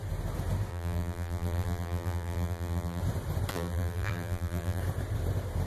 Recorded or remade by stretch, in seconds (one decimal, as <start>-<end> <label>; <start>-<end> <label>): 0.0-0.7 recorded; 0.7-3.0 remade; 3.0-3.5 recorded; 3.5-4.8 remade; 4.8-5.7 recorded